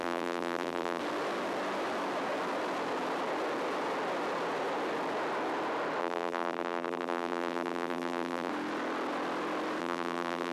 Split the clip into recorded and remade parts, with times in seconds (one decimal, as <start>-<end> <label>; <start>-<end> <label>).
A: 0.0-1.0 remade; 1.0-6.0 recorded; 6.0-8.5 remade; 8.5-9.8 recorded; 9.8-10.5 remade